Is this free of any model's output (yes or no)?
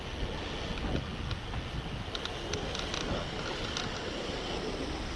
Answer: yes